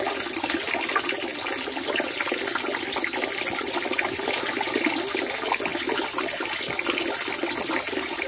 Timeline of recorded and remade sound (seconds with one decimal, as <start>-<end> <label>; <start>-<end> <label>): 0.0-8.3 recorded

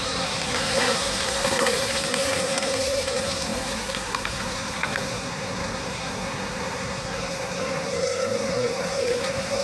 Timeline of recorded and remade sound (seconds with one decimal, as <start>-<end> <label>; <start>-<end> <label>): 0.0-9.6 remade

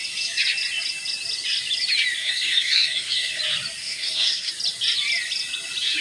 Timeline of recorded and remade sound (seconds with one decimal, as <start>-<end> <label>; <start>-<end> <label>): 0.0-2.2 recorded; 2.2-3.4 remade; 3.4-3.8 recorded; 3.8-4.5 remade; 4.5-6.0 recorded

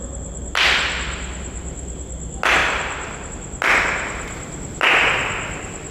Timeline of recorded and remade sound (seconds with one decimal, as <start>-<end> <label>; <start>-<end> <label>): 0.0-5.9 recorded

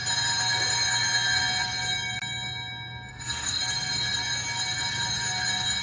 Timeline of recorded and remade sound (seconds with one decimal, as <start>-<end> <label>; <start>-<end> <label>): 0.0-3.1 recorded; 3.1-3.6 remade; 3.6-5.8 recorded

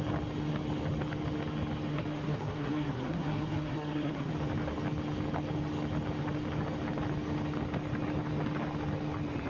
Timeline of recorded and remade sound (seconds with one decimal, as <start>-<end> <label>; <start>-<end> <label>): 0.0-1.9 recorded; 1.9-4.3 remade; 4.3-9.5 recorded

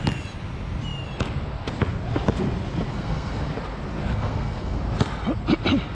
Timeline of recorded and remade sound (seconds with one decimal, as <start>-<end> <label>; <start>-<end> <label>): 0.0-2.9 recorded; 2.9-3.5 remade; 3.5-4.1 recorded; 4.1-4.8 remade; 4.8-5.9 recorded